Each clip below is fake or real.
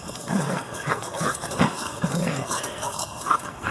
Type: fake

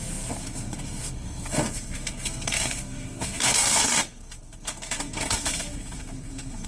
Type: fake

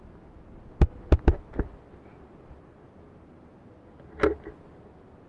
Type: real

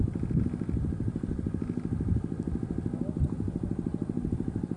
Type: real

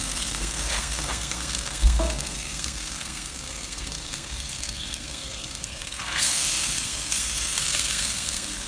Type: fake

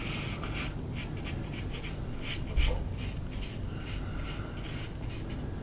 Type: real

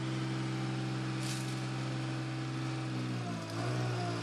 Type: real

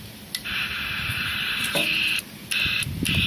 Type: real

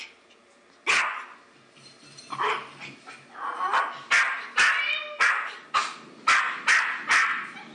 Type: real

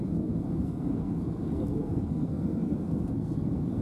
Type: fake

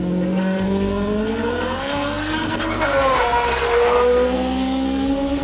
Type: fake